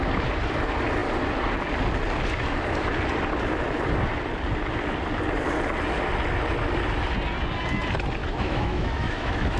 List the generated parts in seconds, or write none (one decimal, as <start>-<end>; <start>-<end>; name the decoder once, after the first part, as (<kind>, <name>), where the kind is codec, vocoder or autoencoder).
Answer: 8.2-9.6 (autoencoder, DAC-VAE)